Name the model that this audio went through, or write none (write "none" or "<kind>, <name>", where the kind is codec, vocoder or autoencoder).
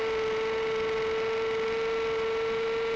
none